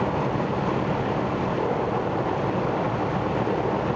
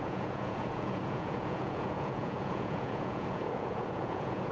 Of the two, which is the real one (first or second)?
first